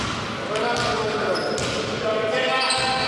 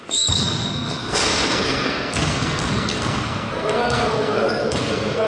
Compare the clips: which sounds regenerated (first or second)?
second